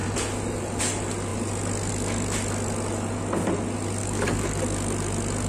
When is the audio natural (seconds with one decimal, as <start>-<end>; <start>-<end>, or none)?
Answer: 0.0-4.0; 4.6-5.5